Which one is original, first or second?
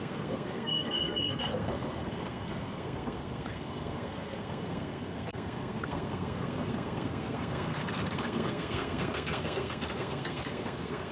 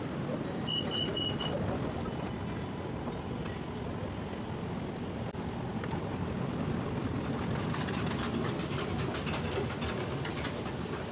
second